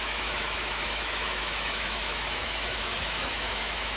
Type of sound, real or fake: fake